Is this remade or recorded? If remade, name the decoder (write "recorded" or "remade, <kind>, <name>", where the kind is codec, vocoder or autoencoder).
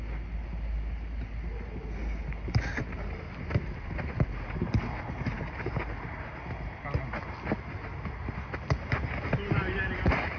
recorded